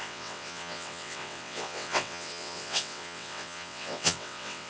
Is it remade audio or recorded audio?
remade